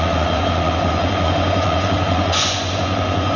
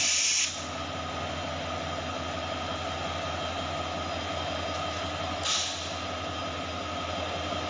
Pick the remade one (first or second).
first